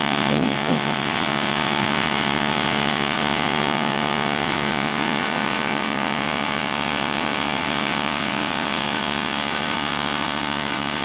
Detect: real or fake fake